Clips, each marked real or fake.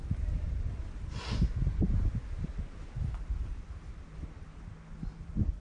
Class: real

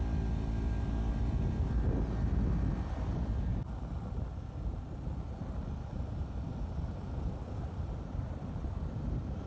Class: real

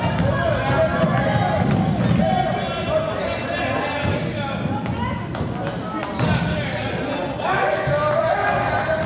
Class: real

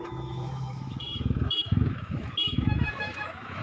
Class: fake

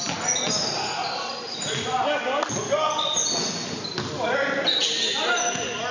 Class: real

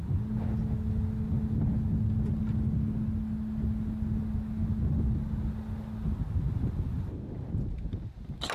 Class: real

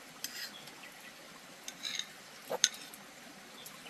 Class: real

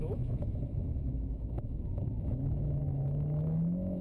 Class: fake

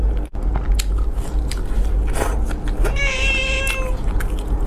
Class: real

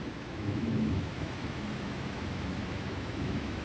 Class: fake